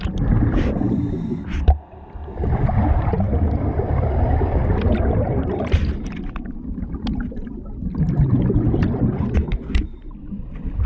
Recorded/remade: remade